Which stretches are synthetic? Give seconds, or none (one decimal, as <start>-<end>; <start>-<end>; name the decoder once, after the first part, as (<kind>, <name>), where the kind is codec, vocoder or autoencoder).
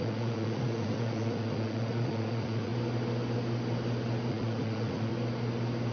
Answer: 0.0-2.7 (vocoder, Vocos); 4.3-5.1